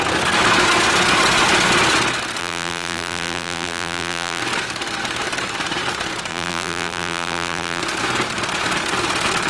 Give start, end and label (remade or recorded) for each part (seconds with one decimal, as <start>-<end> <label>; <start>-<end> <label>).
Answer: 0.0-2.4 recorded; 2.4-4.4 remade; 4.4-6.3 recorded; 6.3-7.8 remade; 7.8-9.5 recorded